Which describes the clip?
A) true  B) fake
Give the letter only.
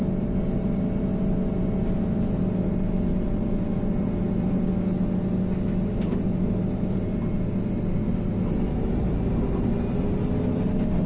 A